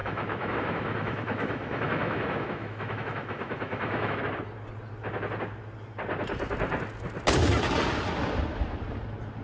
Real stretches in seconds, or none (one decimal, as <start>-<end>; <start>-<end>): 4.2-9.4